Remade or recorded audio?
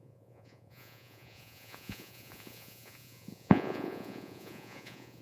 remade